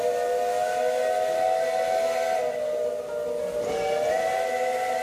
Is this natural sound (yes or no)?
yes